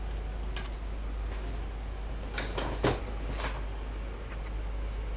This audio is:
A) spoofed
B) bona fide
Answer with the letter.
B